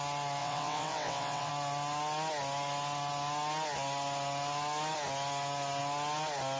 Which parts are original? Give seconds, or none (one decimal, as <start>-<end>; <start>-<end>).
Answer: 0.0-0.4; 1.5-6.6